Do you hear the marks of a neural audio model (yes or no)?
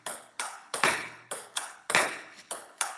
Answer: yes